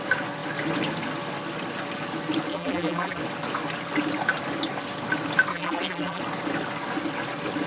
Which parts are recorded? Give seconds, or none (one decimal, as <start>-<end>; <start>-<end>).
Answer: 0.0-2.5; 3.2-5.5; 6.2-7.7

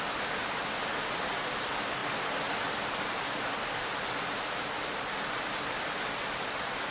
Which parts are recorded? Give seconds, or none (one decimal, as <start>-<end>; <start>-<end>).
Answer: 0.0-6.9

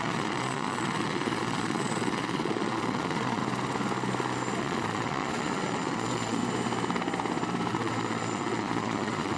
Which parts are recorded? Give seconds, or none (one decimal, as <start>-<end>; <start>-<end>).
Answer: 3.4-4.6; 6.4-7.7

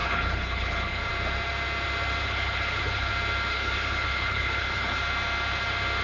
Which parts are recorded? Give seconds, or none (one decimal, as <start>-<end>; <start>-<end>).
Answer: 1.1-2.2; 3.1-3.5; 5.0-6.0

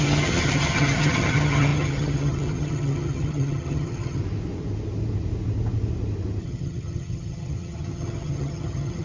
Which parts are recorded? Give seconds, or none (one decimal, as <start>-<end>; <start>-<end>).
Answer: 4.2-6.4

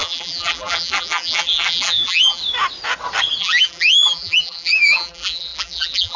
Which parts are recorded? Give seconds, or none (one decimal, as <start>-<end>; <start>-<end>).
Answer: 2.4-3.4

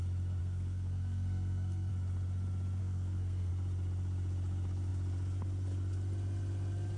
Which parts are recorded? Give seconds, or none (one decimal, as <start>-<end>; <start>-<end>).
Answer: 0.0-0.4; 1.9-2.8; 3.5-7.0

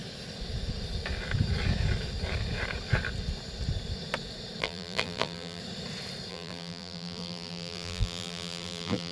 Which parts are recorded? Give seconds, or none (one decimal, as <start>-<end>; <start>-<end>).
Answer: 0.0-4.6; 5.6-6.3